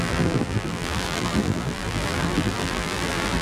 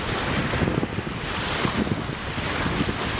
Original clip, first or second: second